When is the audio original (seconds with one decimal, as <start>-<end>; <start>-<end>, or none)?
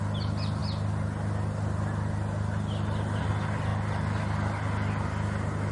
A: 0.0-5.7